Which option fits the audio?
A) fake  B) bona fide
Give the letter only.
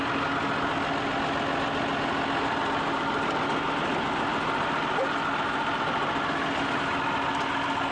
B